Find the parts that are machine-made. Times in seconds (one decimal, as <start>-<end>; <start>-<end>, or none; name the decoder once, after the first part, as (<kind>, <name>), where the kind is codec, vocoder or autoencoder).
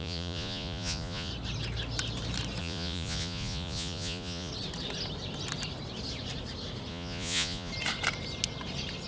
0.0-1.3 (vocoder, Vocos); 2.6-4.5; 6.9-7.7